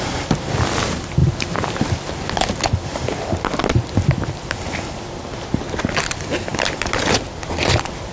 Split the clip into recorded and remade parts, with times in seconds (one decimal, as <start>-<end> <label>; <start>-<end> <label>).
0.0-8.1 recorded